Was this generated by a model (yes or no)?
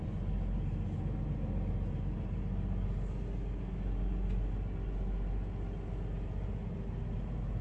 no